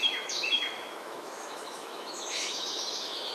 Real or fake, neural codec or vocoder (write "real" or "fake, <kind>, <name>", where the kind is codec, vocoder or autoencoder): fake, autoencoder, DAC-VAE